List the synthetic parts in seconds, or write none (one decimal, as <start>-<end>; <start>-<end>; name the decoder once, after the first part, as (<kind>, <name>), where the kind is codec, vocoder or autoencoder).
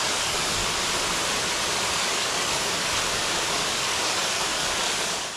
0.0-0.6 (codec, DAC); 1.9-5.4